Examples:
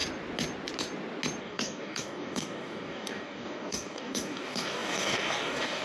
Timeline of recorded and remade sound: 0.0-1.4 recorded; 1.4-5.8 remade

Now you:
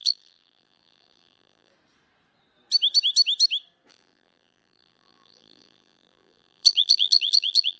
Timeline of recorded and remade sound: 0.0-1.7 remade; 1.7-3.9 recorded; 3.9-7.8 remade

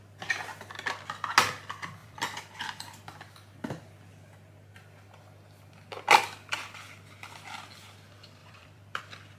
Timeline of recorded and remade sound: 0.0-2.0 recorded; 2.0-2.6 remade; 2.6-8.4 recorded; 8.4-9.0 remade; 9.0-9.4 recorded